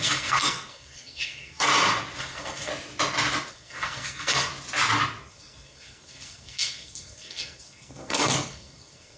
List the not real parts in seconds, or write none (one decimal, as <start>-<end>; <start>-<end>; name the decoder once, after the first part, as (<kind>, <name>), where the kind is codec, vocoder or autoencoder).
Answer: 0.0-1.7 (codec, SNAC); 2.2-2.7; 3.5-4.5; 5.3-9.2